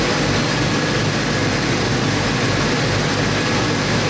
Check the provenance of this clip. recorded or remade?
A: recorded